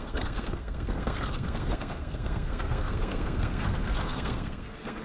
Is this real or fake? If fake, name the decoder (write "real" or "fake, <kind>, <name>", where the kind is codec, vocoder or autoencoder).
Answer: fake, codec, SNAC